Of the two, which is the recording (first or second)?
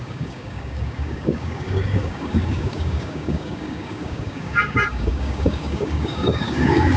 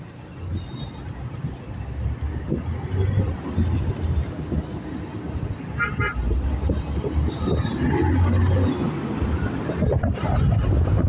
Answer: second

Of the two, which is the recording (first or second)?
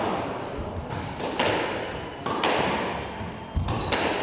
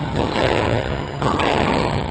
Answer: first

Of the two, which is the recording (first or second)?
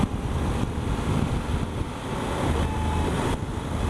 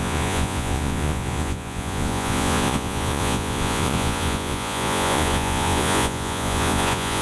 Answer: first